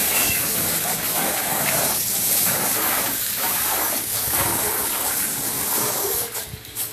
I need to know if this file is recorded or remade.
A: remade